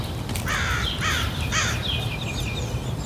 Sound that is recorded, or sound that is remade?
recorded